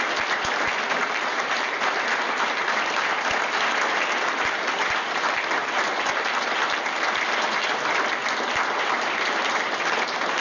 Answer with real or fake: real